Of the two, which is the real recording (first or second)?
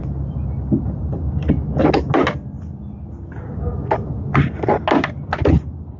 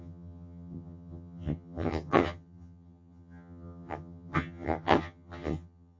first